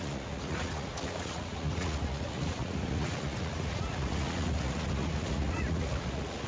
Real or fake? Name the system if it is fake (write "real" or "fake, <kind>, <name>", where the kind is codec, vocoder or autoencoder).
fake, vocoder, Vocos